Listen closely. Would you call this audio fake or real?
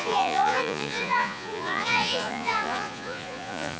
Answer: fake